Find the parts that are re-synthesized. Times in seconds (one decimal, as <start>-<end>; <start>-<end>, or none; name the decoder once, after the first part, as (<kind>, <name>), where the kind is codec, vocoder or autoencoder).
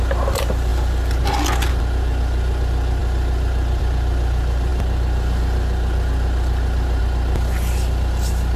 none